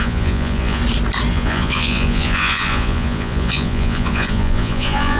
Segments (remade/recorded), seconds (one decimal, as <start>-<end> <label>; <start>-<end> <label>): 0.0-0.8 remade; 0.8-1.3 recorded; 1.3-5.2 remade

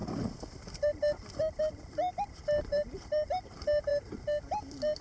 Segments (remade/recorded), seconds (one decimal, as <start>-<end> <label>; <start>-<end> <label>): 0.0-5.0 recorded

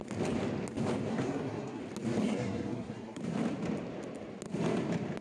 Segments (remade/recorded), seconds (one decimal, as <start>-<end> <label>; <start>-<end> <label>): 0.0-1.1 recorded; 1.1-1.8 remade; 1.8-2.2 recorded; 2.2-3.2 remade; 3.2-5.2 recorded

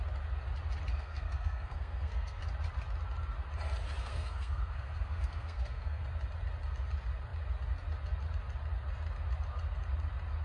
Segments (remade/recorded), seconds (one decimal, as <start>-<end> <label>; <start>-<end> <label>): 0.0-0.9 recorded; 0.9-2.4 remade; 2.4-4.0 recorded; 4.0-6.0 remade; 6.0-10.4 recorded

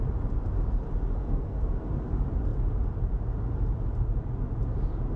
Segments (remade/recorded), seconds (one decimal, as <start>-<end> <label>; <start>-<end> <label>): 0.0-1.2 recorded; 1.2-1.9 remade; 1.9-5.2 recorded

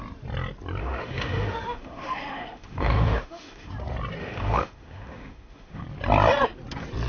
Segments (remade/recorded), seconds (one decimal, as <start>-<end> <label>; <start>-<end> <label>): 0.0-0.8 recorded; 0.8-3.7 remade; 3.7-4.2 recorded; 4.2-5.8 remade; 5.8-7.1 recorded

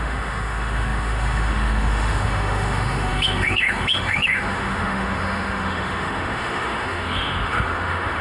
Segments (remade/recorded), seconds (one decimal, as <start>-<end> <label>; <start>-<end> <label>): 0.0-8.2 remade